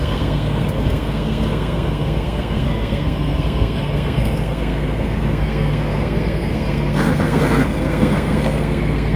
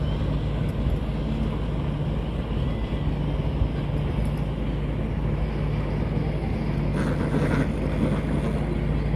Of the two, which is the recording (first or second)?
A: second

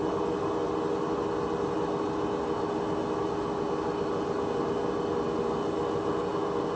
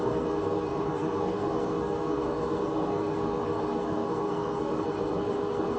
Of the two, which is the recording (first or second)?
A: first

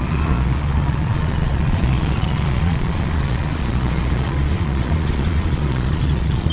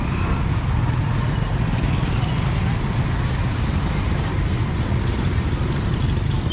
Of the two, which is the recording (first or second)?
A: second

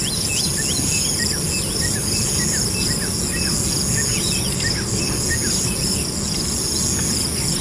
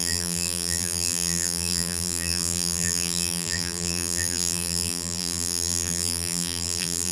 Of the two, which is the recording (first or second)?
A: first